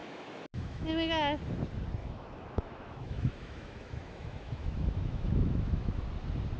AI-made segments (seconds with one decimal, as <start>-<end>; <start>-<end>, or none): 0.0-0.9; 2.0-6.0